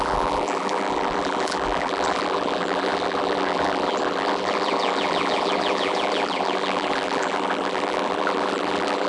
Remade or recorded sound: remade